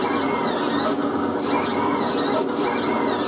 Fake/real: real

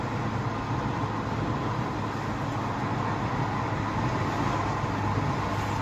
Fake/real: real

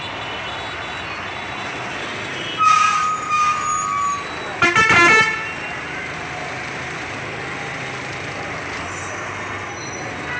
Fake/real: real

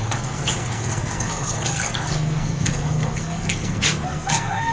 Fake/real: fake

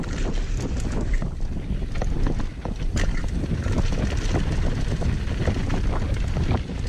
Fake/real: real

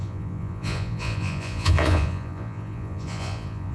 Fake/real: fake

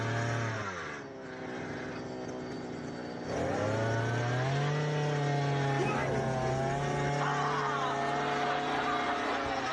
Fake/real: real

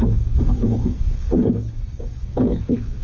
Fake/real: fake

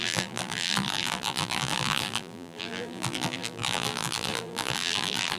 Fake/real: fake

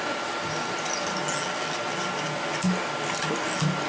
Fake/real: real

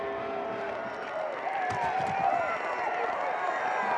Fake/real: real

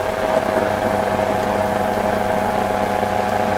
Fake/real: real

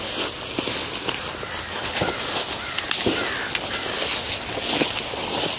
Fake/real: real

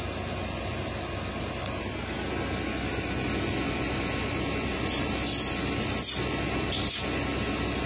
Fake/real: real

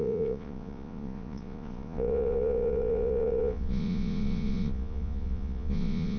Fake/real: fake